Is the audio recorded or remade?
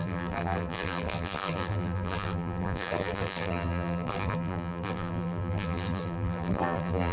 remade